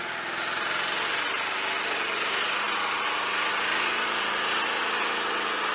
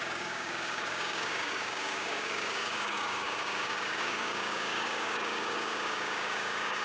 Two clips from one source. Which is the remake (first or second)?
second